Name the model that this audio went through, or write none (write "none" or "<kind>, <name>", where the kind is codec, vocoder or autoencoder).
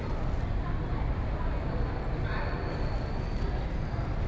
none